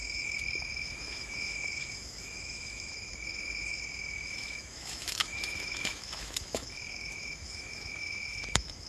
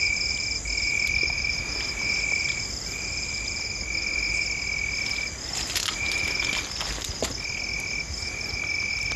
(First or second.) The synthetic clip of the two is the first